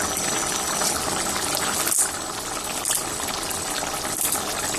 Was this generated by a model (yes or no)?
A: no